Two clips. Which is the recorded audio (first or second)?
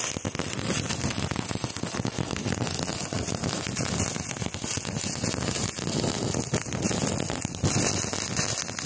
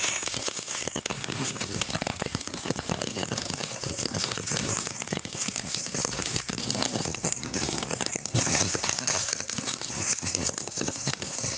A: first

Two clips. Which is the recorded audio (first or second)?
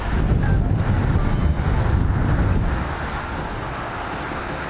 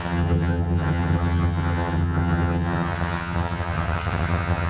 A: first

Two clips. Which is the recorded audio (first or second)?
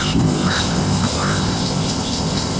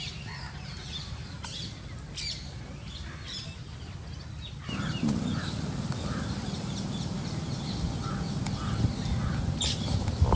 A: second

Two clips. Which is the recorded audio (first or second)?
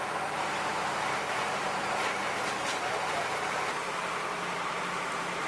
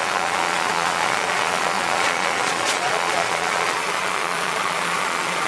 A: first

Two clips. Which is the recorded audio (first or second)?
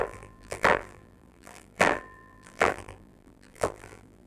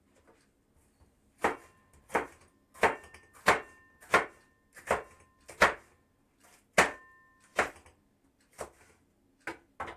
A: second